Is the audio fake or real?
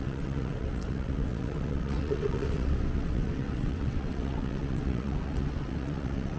fake